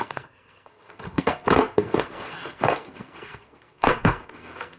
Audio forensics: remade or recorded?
remade